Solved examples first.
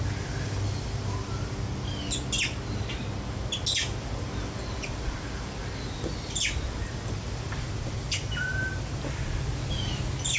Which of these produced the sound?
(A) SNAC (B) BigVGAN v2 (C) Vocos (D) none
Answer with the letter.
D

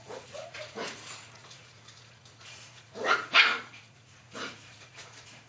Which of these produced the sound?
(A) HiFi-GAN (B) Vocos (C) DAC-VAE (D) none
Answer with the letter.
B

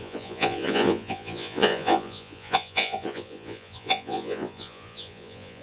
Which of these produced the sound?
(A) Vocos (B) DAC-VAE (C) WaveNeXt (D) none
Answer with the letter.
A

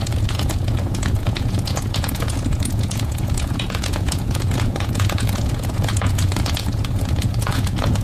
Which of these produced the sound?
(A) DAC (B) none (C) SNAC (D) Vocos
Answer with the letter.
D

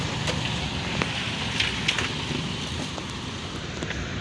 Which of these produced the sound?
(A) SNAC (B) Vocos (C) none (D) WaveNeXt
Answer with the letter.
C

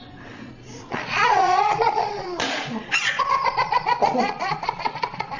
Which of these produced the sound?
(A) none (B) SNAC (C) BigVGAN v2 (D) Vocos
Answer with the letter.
D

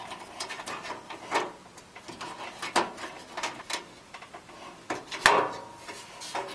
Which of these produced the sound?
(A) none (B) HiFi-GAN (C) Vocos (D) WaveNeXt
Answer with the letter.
A